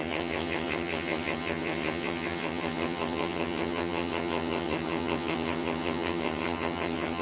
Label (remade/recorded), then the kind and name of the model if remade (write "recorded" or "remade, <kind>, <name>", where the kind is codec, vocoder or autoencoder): remade, vocoder, HiFi-GAN